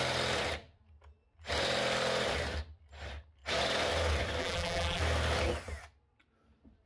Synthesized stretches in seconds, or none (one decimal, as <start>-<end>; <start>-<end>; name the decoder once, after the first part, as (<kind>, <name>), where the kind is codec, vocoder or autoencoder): 4.4-5.0 (vocoder, BigVGAN v2)

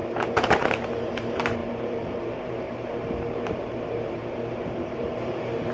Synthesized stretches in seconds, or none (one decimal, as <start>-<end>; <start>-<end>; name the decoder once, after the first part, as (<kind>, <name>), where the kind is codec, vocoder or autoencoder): 0.9-5.7 (vocoder, BigVGAN v2)

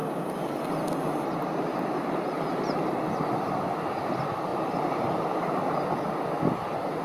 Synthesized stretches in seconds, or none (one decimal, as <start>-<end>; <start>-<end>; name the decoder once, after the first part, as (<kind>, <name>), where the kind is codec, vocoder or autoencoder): 0.0-0.6 (vocoder, BigVGAN v2); 1.7-3.5; 4.5-6.0

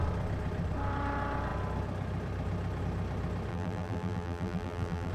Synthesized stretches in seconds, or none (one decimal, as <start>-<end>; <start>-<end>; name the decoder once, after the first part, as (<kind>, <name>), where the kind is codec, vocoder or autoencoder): 3.5-5.1 (vocoder, BigVGAN v2)